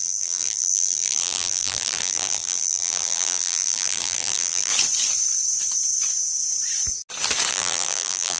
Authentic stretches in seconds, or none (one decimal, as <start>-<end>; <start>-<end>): 4.7-7.5